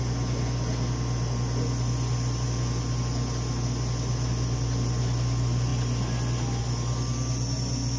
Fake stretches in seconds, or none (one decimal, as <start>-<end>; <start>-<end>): none

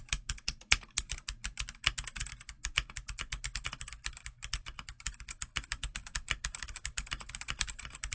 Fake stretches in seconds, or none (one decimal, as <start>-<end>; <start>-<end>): 0.0-1.4; 6.3-8.1

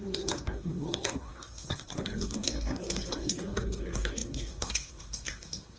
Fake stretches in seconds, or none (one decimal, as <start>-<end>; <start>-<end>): 0.0-5.8